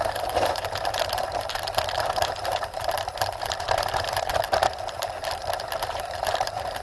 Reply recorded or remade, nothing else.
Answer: remade